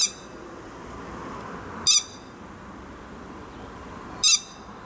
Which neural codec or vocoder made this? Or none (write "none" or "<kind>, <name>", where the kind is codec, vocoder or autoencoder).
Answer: none